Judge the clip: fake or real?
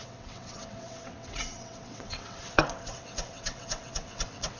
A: fake